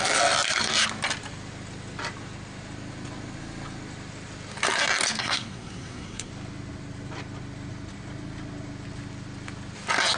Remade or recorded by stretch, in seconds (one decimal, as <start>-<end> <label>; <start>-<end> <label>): 0.0-5.2 recorded; 5.2-6.3 remade; 6.3-10.2 recorded